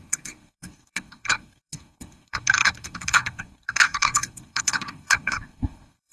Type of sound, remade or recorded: remade